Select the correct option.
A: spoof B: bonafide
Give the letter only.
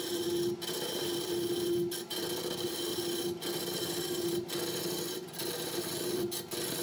B